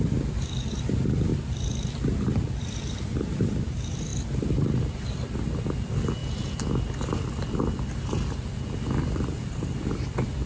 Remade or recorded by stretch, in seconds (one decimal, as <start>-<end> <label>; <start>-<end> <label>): 0.0-6.2 remade; 6.2-9.0 recorded; 9.0-10.5 remade